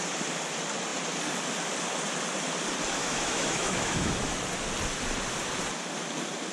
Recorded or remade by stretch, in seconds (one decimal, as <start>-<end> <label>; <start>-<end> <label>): 0.0-3.0 recorded; 3.0-4.4 remade; 4.4-6.5 recorded